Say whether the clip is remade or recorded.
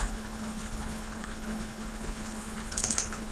remade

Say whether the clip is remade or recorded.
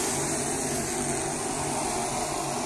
recorded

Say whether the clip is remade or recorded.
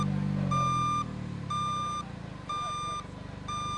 recorded